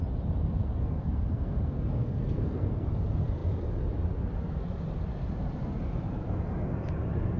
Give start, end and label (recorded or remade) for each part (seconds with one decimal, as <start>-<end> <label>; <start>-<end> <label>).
0.0-0.6 recorded; 0.6-2.9 remade; 2.9-7.4 recorded